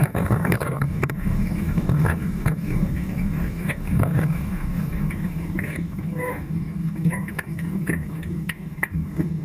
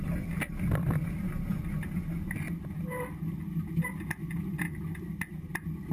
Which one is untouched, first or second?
second